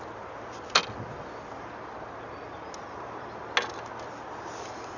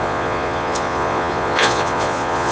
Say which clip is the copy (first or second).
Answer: second